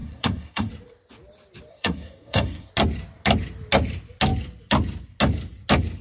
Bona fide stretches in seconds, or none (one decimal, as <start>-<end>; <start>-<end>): 0.7-1.7; 2.7-6.0